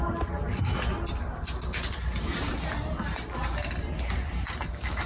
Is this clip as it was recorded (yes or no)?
yes